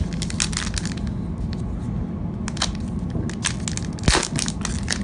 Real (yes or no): yes